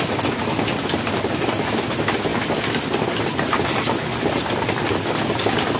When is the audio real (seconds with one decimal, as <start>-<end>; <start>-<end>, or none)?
0.0-5.8